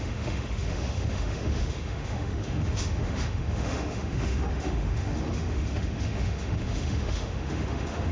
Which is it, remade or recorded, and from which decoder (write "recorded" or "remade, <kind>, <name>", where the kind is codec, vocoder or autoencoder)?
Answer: remade, autoencoder, DAC-VAE